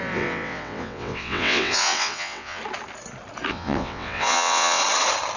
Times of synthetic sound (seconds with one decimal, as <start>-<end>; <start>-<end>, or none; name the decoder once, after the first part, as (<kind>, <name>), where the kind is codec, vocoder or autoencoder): 0.0-2.6 (vocoder, WaveNeXt); 3.5-4.8